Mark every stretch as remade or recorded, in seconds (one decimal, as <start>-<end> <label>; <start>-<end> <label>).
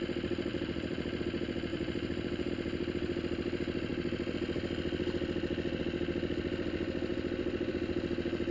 0.0-0.5 recorded; 0.5-1.2 remade; 1.2-1.7 recorded; 1.7-2.5 remade; 2.5-8.5 recorded